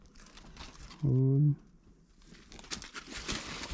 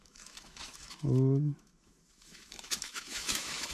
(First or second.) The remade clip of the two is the second